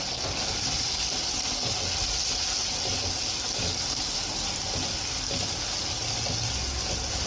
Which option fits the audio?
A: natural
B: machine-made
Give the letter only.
A